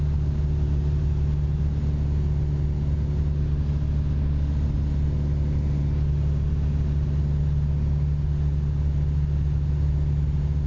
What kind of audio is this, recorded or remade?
recorded